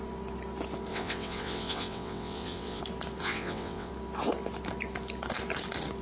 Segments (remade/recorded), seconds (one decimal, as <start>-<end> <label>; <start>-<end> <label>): 0.0-0.9 recorded; 0.9-2.8 remade; 2.8-3.2 recorded; 3.2-3.9 remade; 3.9-6.0 recorded